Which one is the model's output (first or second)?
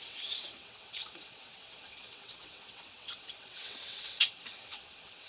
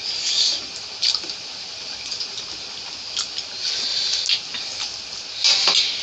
first